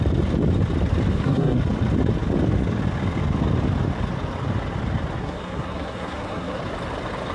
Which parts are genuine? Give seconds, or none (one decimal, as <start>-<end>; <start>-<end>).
0.0-1.1; 1.6-5.2; 6.6-7.3